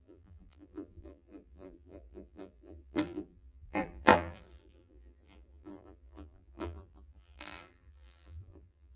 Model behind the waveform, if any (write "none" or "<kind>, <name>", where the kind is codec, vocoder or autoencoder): vocoder, BigVGAN v2